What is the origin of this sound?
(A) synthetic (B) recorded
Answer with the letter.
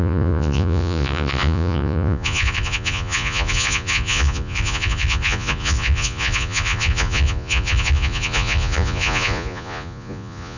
A